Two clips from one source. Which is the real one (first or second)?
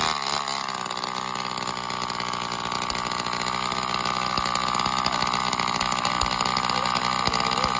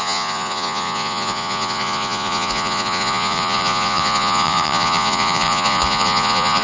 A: first